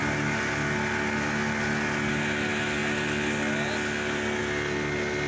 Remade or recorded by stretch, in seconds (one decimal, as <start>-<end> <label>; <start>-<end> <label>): 0.0-5.3 recorded